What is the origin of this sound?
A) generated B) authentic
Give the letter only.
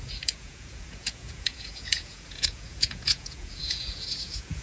A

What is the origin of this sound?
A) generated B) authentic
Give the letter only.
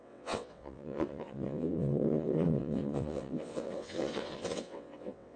A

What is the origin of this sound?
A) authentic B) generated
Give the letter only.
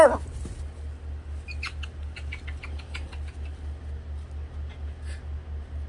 A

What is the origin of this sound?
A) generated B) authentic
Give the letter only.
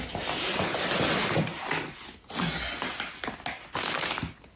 B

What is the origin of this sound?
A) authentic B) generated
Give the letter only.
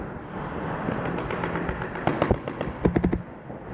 A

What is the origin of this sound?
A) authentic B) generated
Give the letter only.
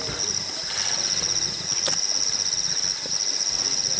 A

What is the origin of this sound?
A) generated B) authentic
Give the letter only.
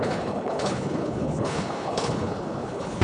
A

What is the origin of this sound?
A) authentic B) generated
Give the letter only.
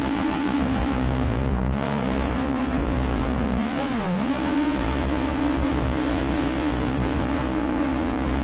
B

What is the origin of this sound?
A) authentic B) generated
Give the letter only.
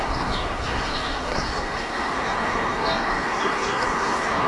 B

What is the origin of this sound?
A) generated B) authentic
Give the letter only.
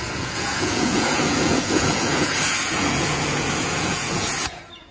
A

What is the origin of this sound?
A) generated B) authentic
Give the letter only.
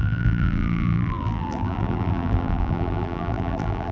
A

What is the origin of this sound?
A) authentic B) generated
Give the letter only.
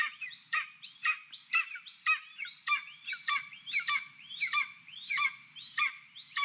B